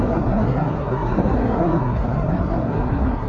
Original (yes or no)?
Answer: no